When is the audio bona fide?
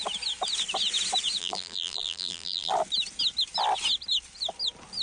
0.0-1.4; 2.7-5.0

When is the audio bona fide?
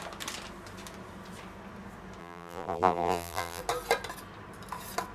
0.0-2.2; 3.6-5.1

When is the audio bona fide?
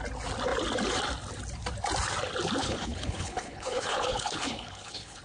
0.0-2.6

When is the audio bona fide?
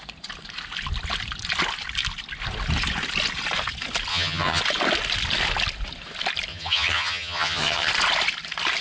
0.0-4.1; 4.6-6.5; 7.9-8.8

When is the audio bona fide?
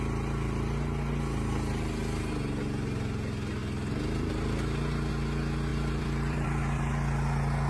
0.0-5.7; 6.9-7.7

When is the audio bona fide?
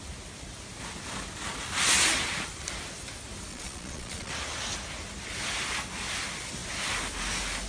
0.0-3.5; 4.3-7.7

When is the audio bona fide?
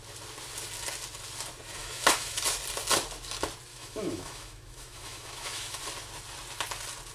0.0-1.8; 2.4-3.7; 5.8-7.1